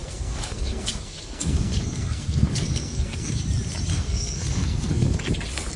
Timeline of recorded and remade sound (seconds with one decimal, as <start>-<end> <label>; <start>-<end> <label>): 0.0-3.4 remade; 3.4-3.9 recorded; 3.9-5.3 remade; 5.3-5.8 recorded